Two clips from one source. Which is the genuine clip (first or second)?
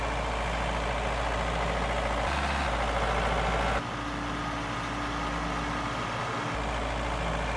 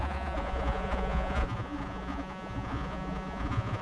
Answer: first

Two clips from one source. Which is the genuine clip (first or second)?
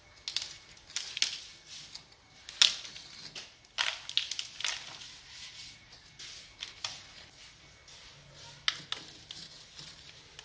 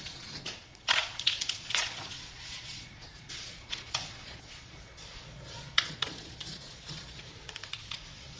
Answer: first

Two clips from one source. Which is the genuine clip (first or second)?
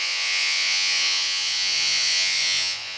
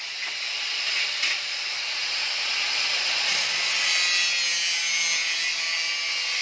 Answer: second